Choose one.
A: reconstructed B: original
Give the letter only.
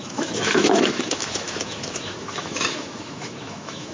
A